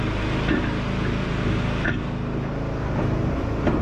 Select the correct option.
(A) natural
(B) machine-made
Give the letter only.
A